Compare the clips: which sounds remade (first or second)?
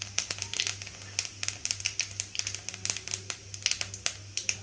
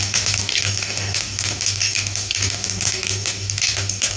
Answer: second